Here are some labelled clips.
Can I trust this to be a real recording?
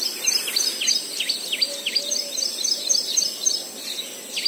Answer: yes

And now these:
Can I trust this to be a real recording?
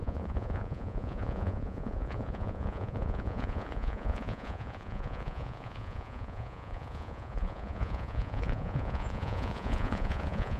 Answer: no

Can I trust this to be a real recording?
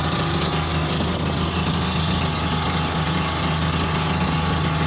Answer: yes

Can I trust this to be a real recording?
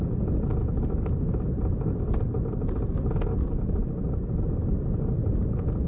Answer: yes